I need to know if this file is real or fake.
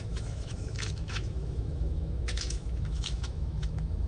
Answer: fake